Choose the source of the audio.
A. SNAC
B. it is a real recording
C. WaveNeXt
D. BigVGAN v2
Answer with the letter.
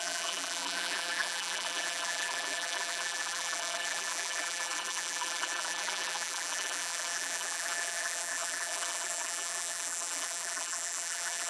D